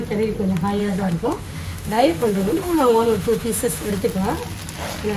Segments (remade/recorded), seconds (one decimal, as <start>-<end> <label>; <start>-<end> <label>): 0.0-0.8 recorded; 0.8-3.9 remade; 3.9-5.2 recorded